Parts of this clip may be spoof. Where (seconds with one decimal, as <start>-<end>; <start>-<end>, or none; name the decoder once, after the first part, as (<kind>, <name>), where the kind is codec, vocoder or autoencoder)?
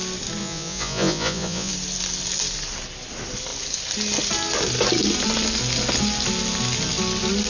0.4-1.7 (vocoder, Vocos)